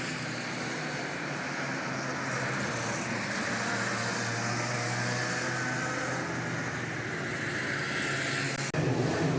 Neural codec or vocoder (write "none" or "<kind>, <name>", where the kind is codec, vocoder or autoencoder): none